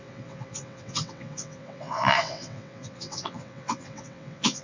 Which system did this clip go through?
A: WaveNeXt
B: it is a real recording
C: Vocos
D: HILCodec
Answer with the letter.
A